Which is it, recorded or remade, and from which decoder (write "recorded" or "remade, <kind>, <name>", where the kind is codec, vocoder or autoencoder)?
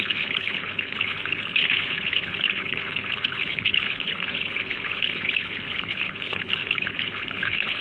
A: remade, codec, HILCodec